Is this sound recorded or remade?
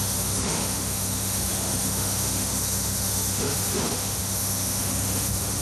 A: remade